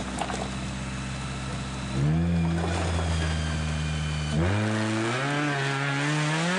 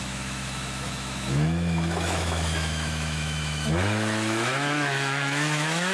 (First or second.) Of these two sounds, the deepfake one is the second